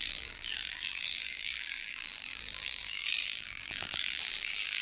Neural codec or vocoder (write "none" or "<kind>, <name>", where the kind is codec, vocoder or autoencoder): vocoder, BigVGAN v2